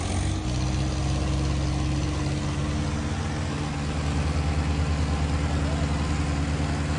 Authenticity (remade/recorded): recorded